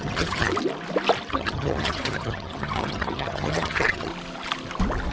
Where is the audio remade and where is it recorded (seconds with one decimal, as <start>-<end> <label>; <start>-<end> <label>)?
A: 0.0-0.5 remade; 0.5-1.3 recorded; 1.3-4.1 remade; 4.1-5.1 recorded

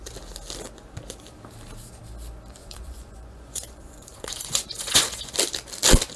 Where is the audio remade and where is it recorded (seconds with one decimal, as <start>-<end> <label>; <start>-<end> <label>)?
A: 0.0-2.6 recorded; 2.6-5.3 remade; 5.3-6.2 recorded

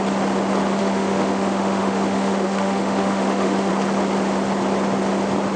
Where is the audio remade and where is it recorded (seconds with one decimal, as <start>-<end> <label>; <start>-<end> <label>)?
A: 0.0-0.8 recorded; 0.8-3.7 remade; 3.7-5.6 recorded

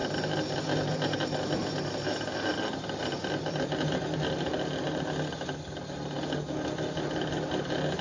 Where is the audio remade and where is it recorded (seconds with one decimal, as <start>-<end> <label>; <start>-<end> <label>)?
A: 0.0-8.0 recorded

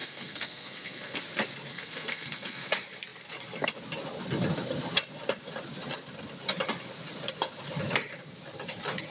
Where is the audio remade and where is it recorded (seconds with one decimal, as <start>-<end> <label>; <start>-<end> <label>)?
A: 0.0-1.2 remade; 1.2-1.7 recorded; 1.7-2.7 remade; 2.7-9.1 recorded

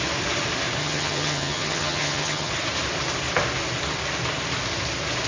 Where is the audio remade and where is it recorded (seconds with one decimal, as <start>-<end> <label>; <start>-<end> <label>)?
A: 0.0-0.8 recorded; 0.8-2.5 remade; 2.5-5.3 recorded

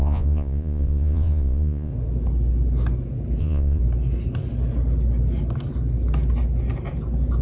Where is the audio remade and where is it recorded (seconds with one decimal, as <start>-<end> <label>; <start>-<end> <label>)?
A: 0.0-1.9 remade; 1.9-3.4 recorded; 3.4-3.8 remade; 3.8-7.4 recorded

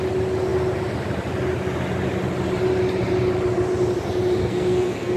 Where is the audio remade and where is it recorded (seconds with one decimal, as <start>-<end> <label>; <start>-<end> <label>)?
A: 0.0-4.4 recorded; 4.4-5.2 remade